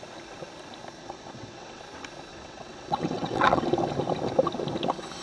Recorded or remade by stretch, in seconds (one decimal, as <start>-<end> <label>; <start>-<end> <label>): 0.0-1.0 recorded; 1.0-1.8 remade; 1.8-2.3 recorded; 2.3-3.6 remade; 3.6-5.2 recorded